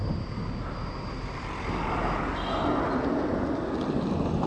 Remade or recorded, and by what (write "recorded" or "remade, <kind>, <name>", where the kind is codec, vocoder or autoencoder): recorded